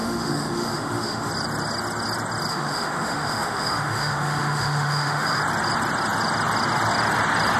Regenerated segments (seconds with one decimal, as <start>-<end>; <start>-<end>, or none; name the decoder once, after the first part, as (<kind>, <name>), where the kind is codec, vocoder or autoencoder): 0.0-1.3 (autoencoder, DAC-VAE); 2.5-5.4